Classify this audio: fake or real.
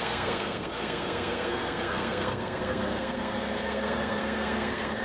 fake